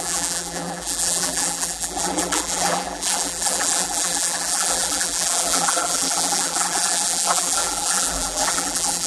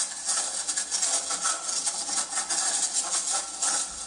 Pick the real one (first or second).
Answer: second